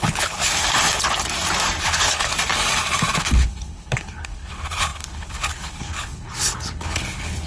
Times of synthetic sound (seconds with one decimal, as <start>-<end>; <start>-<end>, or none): 0.0-0.4; 1.8-2.3; 3.2-7.5